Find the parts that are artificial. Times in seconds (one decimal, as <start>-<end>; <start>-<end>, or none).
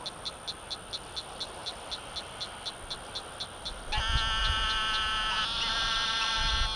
4.4-5.4